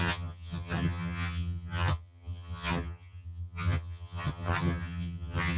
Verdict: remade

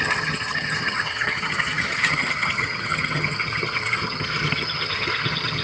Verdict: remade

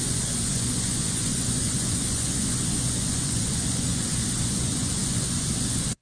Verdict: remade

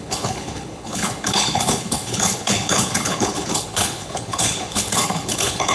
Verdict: remade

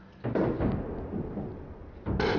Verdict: recorded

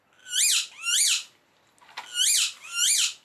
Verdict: recorded